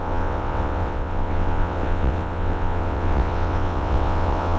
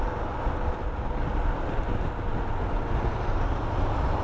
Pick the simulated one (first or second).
first